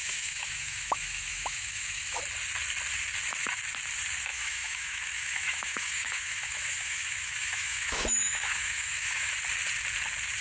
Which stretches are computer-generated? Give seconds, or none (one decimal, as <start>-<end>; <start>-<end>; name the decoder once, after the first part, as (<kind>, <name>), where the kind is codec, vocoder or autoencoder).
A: 0.0-2.2 (autoencoder, DAC-VAE); 4.3-9.3